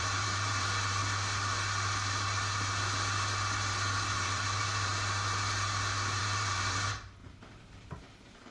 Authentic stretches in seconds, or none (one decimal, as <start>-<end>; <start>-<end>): 1.0-4.1; 4.9-6.2